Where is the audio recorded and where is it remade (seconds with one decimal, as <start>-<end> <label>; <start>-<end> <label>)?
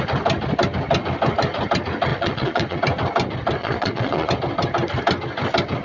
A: 0.0-2.1 recorded; 2.1-2.8 remade; 2.8-3.6 recorded; 3.6-4.3 remade; 4.3-5.8 recorded